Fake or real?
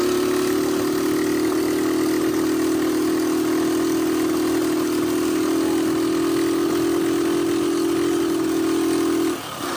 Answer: real